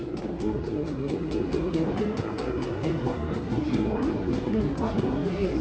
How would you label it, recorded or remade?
remade